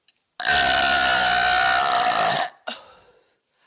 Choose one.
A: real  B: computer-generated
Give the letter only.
A